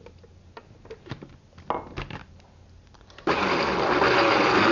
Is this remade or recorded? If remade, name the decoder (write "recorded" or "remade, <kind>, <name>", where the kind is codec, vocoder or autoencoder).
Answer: recorded